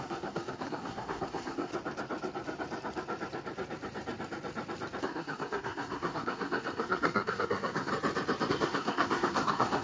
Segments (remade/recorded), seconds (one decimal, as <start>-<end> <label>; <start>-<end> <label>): 0.0-1.7 remade; 1.7-5.0 recorded; 5.0-7.9 remade; 7.9-8.5 recorded; 8.5-9.8 remade